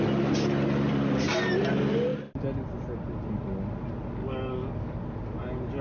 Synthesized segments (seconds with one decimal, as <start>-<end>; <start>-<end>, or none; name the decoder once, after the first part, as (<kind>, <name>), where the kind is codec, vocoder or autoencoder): 4.2-5.0 (codec, DAC)